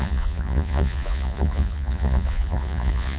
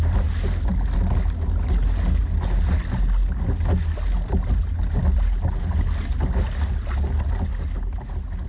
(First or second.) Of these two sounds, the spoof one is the first